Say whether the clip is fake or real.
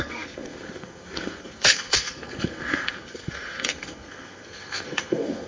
fake